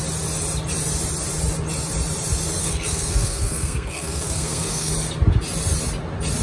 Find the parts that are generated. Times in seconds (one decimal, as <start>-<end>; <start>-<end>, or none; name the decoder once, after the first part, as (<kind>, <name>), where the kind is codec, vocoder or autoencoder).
2.6-4.9 (codec, SNAC)